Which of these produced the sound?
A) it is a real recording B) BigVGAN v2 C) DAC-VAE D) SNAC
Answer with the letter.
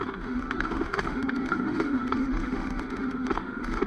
C